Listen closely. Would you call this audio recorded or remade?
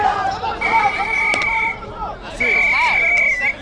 recorded